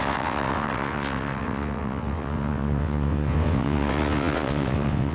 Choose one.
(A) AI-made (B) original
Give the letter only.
A